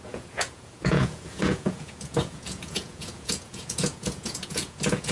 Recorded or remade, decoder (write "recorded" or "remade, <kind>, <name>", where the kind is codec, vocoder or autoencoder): remade, vocoder, Vocos